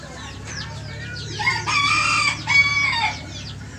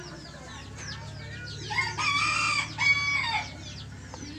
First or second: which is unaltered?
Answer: second